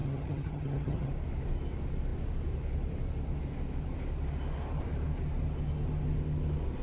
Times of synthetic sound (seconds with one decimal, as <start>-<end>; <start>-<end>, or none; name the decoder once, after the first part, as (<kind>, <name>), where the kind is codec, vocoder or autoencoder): 0.0-1.1 (vocoder, HiFi-GAN)